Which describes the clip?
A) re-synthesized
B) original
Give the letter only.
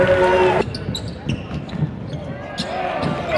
B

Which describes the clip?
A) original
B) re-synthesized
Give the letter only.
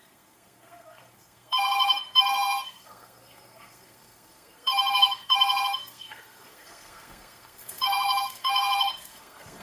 B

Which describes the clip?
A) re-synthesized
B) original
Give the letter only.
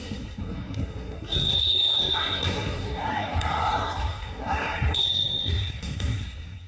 A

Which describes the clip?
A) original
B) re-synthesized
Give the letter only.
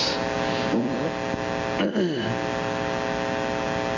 A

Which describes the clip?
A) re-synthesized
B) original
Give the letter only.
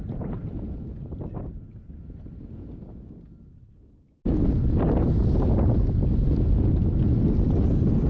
B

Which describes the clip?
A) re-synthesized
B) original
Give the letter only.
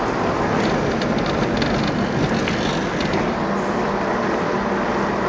B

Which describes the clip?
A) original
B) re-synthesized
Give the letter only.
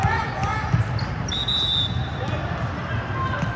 A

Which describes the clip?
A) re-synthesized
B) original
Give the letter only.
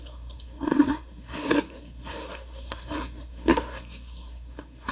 A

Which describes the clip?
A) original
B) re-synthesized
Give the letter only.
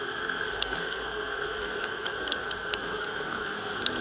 B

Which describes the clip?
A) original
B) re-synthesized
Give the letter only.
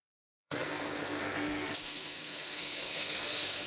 B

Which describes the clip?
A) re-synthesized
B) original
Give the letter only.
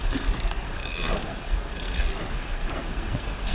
A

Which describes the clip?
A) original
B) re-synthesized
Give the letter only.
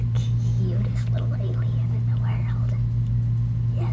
A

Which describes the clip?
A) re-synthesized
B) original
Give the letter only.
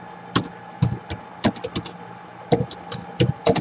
B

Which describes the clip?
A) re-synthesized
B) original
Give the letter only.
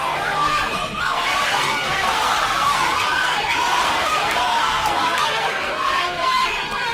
A